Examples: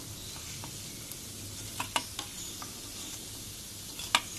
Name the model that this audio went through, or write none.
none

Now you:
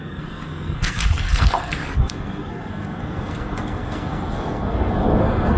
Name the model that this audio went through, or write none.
codec, SNAC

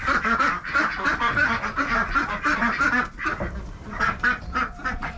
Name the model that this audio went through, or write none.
none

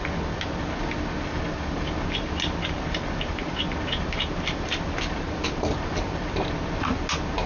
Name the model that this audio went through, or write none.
none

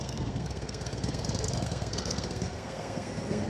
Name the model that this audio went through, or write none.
codec, SNAC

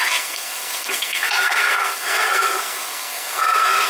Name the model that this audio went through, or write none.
codec, SNAC